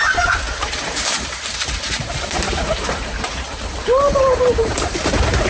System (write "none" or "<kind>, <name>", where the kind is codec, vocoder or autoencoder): vocoder, BigVGAN v2